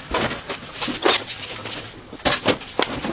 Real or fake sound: real